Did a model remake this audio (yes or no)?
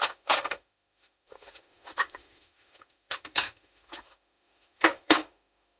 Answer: yes